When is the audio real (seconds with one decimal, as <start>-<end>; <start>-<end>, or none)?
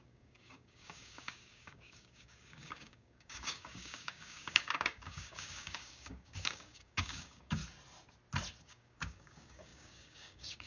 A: 7.6-8.6